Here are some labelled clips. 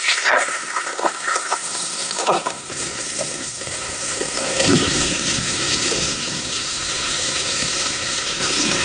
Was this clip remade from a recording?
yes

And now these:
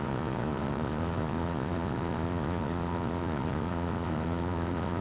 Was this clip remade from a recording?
yes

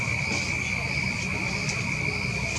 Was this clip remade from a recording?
no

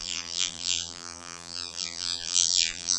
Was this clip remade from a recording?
yes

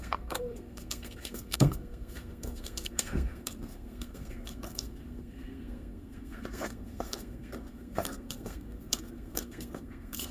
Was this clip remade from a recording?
yes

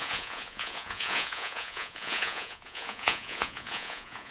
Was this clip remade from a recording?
yes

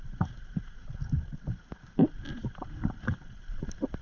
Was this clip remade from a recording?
no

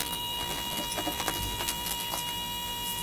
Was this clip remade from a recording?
yes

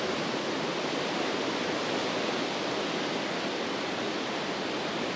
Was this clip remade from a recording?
no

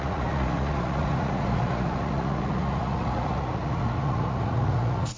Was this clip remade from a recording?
yes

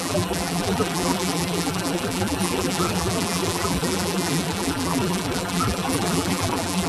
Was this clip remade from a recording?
yes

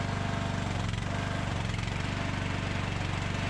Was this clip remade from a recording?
no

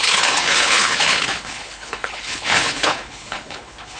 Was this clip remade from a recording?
yes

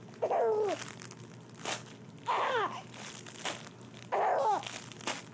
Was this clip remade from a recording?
no